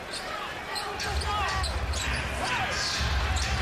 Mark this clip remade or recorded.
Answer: recorded